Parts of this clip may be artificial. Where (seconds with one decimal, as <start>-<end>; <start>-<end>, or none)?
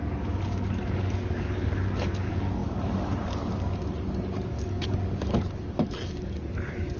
0.0-7.0